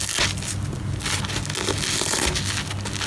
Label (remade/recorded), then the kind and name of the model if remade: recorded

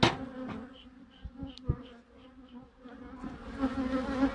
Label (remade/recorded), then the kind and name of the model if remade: recorded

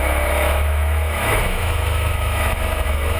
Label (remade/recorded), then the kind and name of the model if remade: remade, autoencoder, DAC-VAE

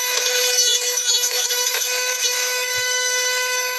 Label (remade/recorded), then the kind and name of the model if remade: remade, autoencoder, DAC-VAE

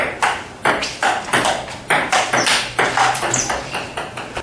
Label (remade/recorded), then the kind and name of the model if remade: recorded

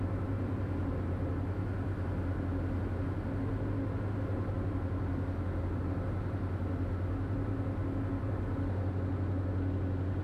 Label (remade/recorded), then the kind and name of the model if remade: recorded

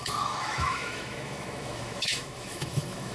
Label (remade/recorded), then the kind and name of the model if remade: remade, autoencoder, DAC-VAE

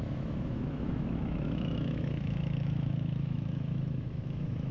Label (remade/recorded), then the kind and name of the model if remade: remade, autoencoder, DAC-VAE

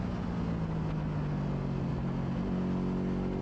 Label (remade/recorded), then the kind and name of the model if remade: recorded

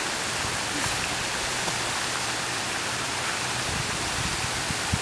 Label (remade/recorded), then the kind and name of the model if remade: recorded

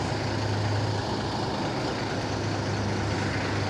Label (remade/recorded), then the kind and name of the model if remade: recorded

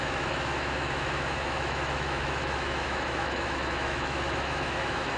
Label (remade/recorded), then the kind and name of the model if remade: remade, autoencoder, DAC-VAE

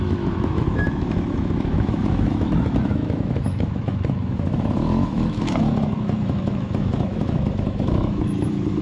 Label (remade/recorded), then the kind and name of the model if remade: remade, autoencoder, DAC-VAE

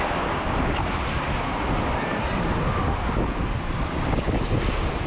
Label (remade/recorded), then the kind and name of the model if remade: recorded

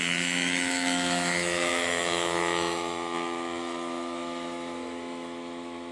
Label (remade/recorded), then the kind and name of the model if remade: remade, autoencoder, DAC-VAE